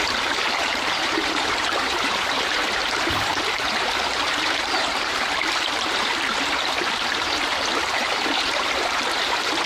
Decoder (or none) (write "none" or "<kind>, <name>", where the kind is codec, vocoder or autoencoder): vocoder, BigVGAN v2